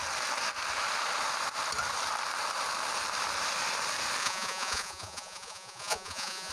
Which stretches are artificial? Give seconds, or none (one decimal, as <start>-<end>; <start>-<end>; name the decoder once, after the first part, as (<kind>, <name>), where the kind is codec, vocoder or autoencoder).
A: 4.2-6.5 (vocoder, Vocos)